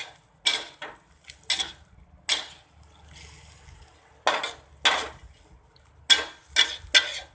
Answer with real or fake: real